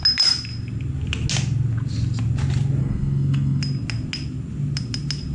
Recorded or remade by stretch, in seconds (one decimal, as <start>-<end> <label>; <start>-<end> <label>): 0.0-2.8 recorded; 2.8-3.6 remade; 3.6-5.3 recorded